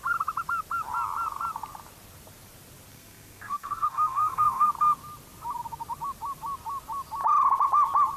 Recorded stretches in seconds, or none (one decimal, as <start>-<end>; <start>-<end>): 0.0-2.9; 4.7-8.2